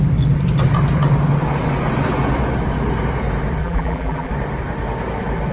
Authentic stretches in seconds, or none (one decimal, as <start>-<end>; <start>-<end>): 0.0-3.6; 4.3-5.5